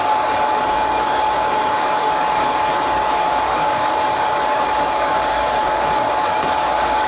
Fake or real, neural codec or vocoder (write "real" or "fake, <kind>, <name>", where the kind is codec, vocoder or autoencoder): fake, codec, DAC